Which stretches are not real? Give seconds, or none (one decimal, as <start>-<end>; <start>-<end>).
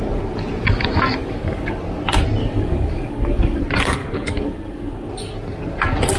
1.2-1.8; 2.4-3.6; 4.0-5.1